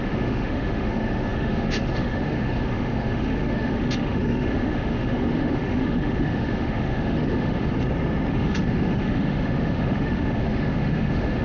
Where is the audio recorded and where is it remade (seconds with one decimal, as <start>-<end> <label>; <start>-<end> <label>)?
0.0-7.7 remade; 7.7-8.3 recorded; 8.3-11.4 remade